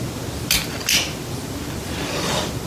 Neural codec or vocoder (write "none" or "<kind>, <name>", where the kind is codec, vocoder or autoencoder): none